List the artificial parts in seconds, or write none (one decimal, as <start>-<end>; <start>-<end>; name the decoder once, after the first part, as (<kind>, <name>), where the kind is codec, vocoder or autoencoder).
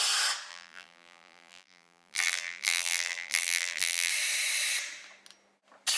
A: 0.5-4.1 (vocoder, BigVGAN v2)